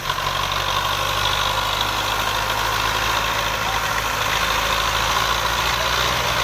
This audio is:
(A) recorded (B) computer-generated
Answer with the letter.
A